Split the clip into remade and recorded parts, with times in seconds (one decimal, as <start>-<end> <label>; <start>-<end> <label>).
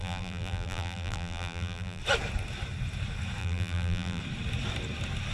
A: 0.0-2.0 remade; 2.0-3.4 recorded; 3.4-4.2 remade; 4.2-5.3 recorded